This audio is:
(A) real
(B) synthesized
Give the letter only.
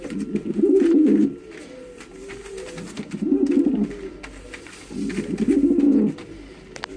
A